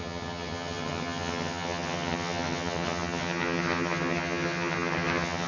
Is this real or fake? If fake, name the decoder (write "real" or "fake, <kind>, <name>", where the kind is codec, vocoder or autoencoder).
fake, vocoder, HiFi-GAN